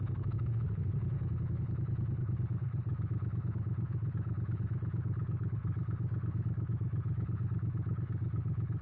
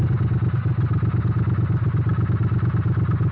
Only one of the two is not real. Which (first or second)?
first